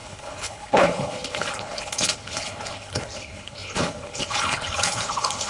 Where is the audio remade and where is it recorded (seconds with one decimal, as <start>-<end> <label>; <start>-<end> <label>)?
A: 0.0-5.5 remade